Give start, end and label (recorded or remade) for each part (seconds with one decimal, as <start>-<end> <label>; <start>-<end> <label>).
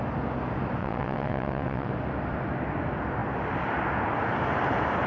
0.0-0.8 recorded; 0.8-1.9 remade; 1.9-5.1 recorded